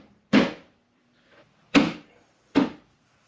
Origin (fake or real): real